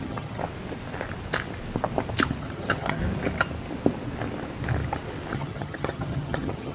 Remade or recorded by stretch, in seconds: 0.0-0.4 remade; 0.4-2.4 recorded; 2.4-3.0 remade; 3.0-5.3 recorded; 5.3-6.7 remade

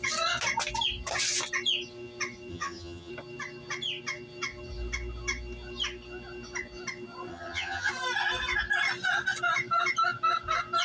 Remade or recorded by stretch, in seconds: 0.0-2.5 recorded; 2.5-3.1 remade; 3.1-7.3 recorded; 7.3-7.9 remade; 7.9-10.8 recorded

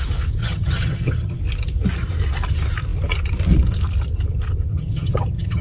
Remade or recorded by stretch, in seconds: 0.0-0.4 recorded; 0.4-1.4 remade; 1.4-4.7 recorded; 4.7-5.6 remade